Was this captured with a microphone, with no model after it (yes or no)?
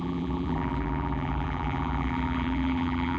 no